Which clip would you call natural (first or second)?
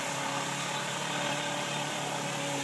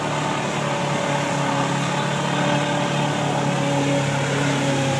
second